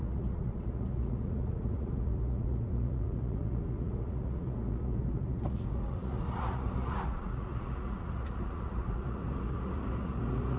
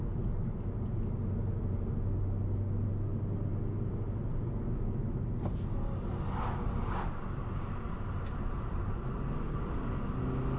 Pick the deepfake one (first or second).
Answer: first